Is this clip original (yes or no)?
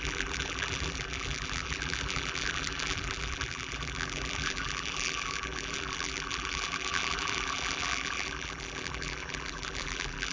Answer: no